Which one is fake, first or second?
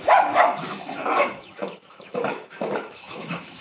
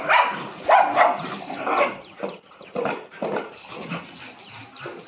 first